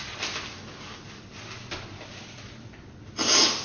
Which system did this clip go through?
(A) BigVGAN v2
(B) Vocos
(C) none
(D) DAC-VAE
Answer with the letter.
C